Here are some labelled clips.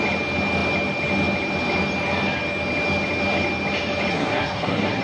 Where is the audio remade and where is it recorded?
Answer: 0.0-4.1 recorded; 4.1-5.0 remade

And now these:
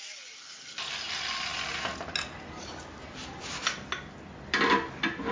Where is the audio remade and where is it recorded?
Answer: 0.0-5.3 recorded

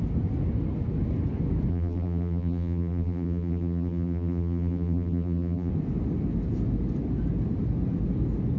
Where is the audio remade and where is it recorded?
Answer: 0.0-1.7 recorded; 1.7-5.7 remade; 5.7-8.6 recorded

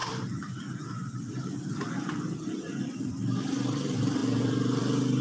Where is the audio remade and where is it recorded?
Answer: 0.0-3.1 remade; 3.1-5.2 recorded